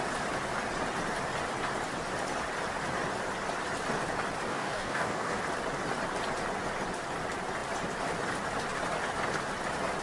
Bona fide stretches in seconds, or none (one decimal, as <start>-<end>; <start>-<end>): 0.0-4.5; 5.4-10.0